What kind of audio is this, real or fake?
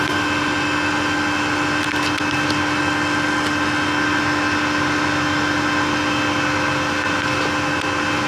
real